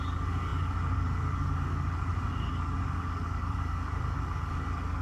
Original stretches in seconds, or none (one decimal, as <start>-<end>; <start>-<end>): none